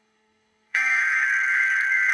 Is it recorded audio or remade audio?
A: remade